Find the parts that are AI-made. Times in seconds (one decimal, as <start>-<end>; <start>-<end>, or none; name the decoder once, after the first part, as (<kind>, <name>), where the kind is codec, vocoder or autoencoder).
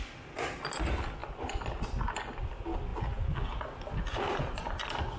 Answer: none